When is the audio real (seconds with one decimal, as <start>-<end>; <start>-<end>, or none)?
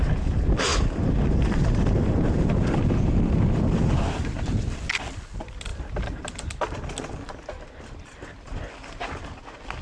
0.0-0.7; 3.8-9.8